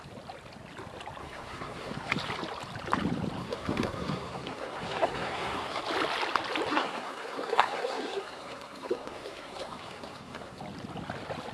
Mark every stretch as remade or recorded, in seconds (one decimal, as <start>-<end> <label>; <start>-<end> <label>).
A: 0.0-1.2 recorded; 1.2-2.1 remade; 2.1-3.4 recorded; 3.4-5.8 remade; 5.8-6.7 recorded; 6.7-10.6 remade; 10.6-11.5 recorded